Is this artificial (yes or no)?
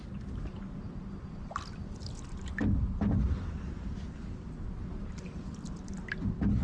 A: no